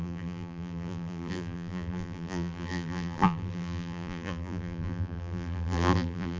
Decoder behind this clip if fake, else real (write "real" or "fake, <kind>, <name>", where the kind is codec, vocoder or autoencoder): fake, vocoder, BigVGAN v2